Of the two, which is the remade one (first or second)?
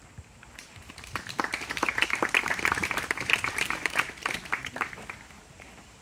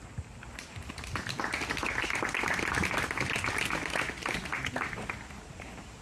first